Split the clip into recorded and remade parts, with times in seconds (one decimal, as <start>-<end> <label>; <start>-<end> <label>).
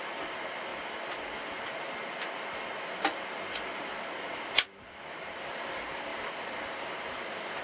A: 0.0-6.1 remade; 6.1-7.6 recorded